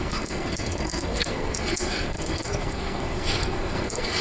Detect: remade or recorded remade